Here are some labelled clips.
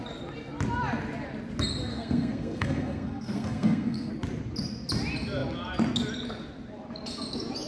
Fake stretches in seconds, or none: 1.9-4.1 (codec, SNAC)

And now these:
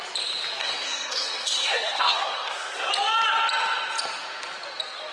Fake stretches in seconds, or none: 0.6-2.9 (codec, SNAC)

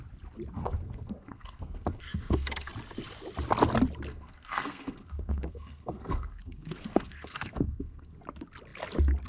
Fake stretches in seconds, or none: 0.6-2.7 (codec, SNAC); 4.1-8.1

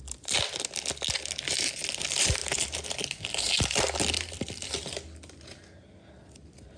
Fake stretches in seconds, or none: none

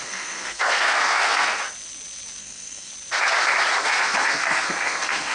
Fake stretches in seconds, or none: 0.0-1.6 (codec, SNAC); 2.4-2.9; 3.8-5.3

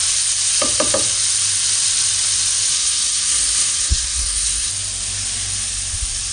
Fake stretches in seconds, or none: 2.7-4.7 (codec, SNAC)

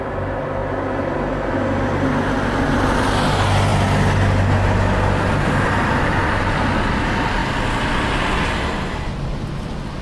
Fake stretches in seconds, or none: none

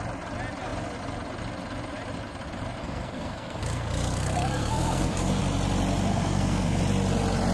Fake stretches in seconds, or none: 2.8-5.4 (codec, SNAC); 6.1-6.8